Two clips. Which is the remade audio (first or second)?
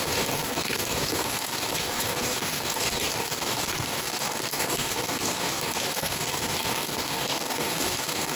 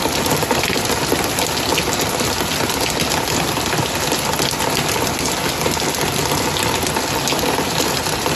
first